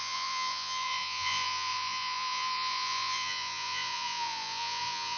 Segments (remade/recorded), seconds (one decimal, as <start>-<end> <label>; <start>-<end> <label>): 0.0-5.2 remade

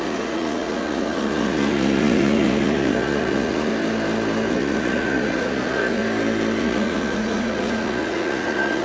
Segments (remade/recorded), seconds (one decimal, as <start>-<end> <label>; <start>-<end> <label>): 0.0-3.7 remade; 3.7-4.5 recorded; 4.5-6.0 remade; 6.0-6.6 recorded; 6.6-8.8 remade

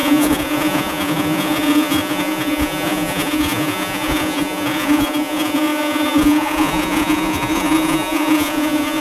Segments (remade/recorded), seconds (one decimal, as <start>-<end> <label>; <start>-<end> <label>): 0.0-9.0 remade

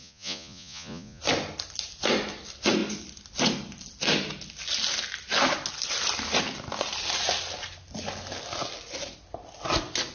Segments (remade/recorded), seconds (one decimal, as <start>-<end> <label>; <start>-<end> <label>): 0.0-1.2 remade; 1.2-10.1 recorded

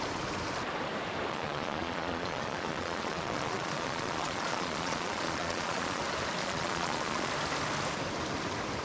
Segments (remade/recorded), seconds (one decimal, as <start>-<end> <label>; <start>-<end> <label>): 0.0-1.3 recorded; 1.3-6.0 remade; 6.0-6.4 recorded; 6.4-7.3 remade; 7.3-8.8 recorded